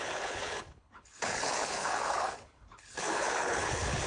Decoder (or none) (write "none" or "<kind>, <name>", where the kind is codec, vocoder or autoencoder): codec, HILCodec